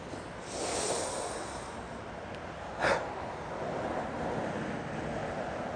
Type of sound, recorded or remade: recorded